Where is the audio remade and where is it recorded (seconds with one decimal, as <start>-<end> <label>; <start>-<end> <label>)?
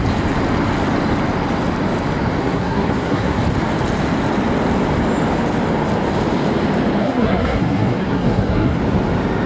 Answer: 0.0-2.4 recorded; 2.4-3.4 remade; 3.4-7.0 recorded; 7.0-8.8 remade; 8.8-9.5 recorded